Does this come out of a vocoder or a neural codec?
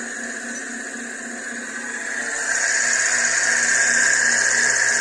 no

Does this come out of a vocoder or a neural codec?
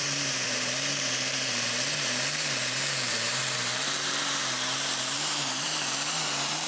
yes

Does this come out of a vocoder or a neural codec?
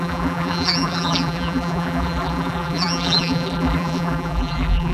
yes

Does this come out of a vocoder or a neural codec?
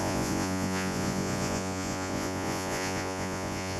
yes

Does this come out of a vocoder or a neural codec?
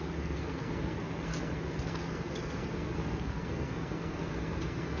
yes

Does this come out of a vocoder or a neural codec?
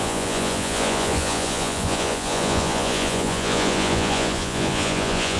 yes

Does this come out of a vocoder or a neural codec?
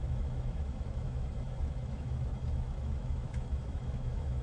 yes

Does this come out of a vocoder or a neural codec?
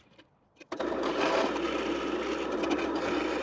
no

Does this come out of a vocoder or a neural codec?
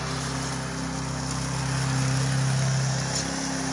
no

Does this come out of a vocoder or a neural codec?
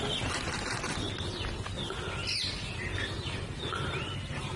no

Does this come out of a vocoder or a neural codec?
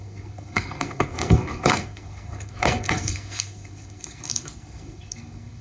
yes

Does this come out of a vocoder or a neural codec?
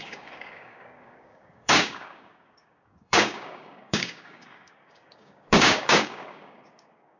yes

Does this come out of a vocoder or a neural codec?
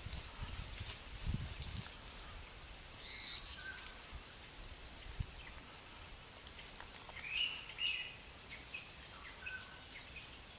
no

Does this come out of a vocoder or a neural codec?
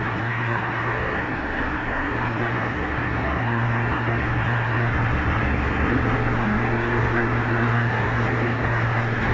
yes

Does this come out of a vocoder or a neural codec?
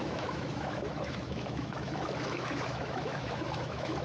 yes